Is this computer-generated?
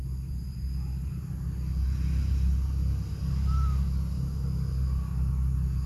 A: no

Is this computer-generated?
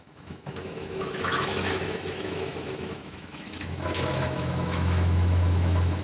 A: yes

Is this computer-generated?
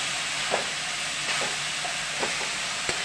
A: no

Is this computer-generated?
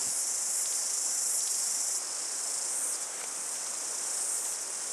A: no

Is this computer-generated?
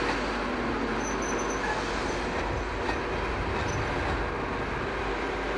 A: no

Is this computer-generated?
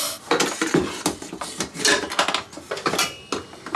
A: no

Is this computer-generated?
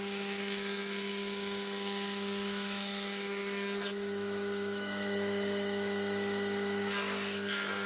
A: yes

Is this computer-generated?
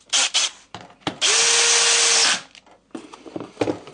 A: no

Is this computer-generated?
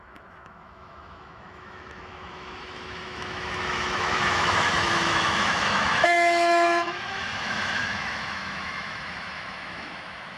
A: yes